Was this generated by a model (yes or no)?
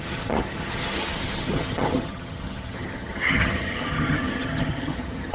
yes